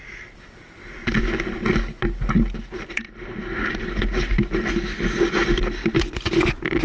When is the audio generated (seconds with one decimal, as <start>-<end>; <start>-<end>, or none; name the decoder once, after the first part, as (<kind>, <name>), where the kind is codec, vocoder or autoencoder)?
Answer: none

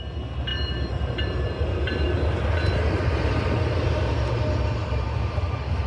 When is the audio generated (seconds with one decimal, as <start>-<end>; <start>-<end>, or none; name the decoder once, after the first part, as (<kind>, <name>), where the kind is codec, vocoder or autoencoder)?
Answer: none

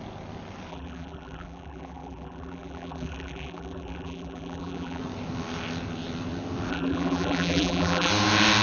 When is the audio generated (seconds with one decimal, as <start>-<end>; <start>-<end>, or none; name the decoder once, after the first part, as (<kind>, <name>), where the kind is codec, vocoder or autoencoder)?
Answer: 0.7-5.0 (vocoder, BigVGAN v2); 6.7-8.1